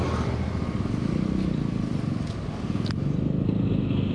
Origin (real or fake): real